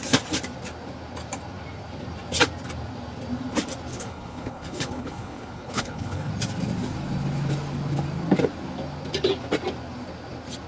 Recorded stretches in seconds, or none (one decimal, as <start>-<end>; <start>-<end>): 0.0-3.9; 6.3-10.7

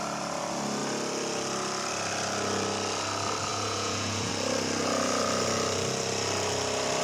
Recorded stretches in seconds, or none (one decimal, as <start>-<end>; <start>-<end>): 0.0-3.5; 4.3-7.0